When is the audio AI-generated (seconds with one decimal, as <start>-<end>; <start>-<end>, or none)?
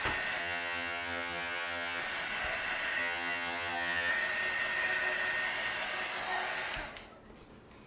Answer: 0.4-2.0; 3.0-4.1